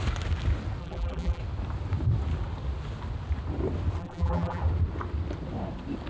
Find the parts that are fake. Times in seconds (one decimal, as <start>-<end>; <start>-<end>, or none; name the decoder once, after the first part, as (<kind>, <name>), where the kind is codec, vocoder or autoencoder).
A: 0.8-1.4 (vocoder, BigVGAN v2); 4.0-4.6